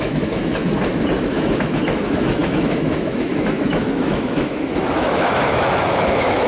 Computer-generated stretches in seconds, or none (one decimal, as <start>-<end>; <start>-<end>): 0.0-0.6; 1.3-6.5